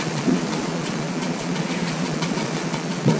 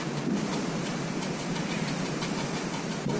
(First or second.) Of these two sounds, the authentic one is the second